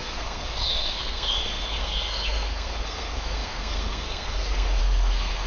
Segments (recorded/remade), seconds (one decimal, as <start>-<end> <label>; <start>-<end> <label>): 0.0-5.5 remade